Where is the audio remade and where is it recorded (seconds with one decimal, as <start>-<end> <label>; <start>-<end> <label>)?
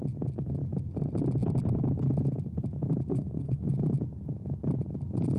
0.0-3.1 recorded; 3.1-3.7 remade; 3.7-5.4 recorded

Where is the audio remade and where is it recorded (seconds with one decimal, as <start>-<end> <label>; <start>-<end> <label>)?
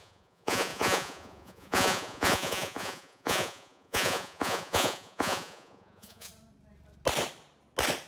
0.0-6.3 remade; 6.3-8.1 recorded